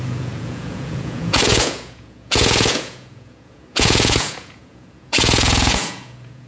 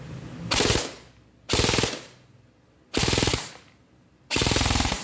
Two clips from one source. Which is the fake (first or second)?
first